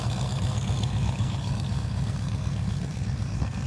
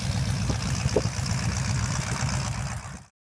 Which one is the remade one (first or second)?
first